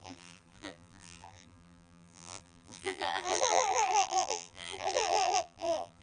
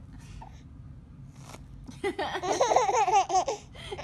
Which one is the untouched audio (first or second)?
second